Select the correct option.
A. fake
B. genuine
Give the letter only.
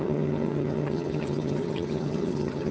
A